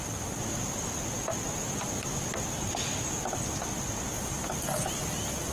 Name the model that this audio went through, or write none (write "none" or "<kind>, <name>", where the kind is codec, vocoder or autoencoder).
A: none